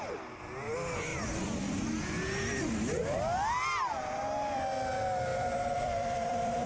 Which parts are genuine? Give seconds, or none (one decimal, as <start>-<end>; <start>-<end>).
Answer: 0.0-5.3